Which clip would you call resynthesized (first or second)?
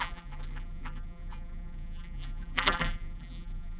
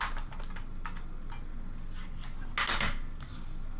first